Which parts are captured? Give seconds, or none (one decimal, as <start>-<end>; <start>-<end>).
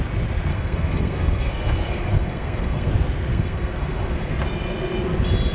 0.0-0.5; 2.9-3.3; 4.3-5.5